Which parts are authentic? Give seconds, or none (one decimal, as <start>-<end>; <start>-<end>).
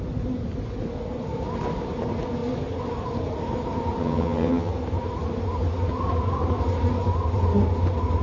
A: 0.0-4.0; 4.7-8.2